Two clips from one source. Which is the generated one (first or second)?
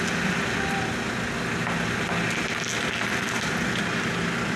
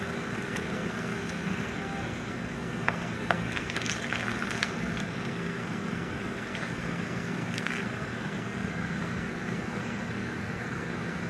second